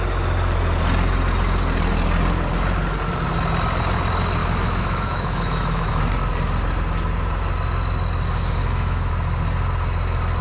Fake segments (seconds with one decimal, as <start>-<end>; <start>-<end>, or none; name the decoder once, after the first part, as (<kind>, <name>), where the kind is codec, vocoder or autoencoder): 4.4-6.1 (autoencoder, DAC-VAE); 8.6-9.1